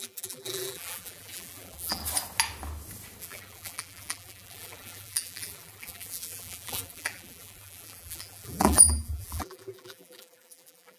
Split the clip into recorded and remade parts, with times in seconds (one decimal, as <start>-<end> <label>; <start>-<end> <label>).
0.0-2.0 remade; 2.0-3.2 recorded; 3.2-11.0 remade